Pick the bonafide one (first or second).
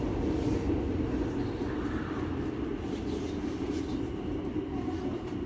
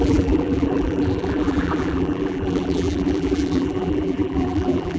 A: first